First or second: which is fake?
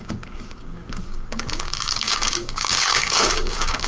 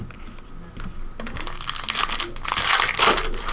first